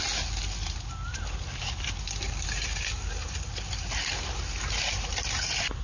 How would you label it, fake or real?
real